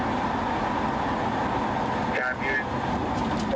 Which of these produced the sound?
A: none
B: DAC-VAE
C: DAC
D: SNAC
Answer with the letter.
A